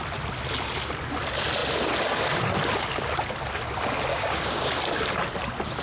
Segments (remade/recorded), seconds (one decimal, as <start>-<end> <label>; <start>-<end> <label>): 0.0-4.1 recorded; 4.1-4.7 remade; 4.7-5.8 recorded